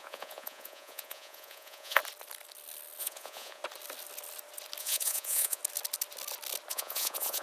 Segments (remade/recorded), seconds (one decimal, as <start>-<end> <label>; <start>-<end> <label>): 0.0-2.0 remade; 2.0-3.0 recorded; 3.0-3.6 remade; 3.6-4.8 recorded; 4.8-5.6 remade; 5.6-6.7 recorded; 6.7-7.4 remade